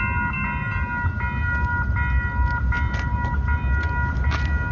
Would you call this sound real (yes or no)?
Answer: yes